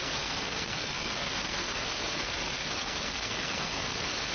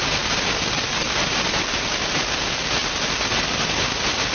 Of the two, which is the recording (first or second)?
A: second